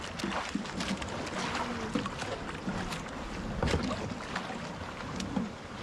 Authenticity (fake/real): real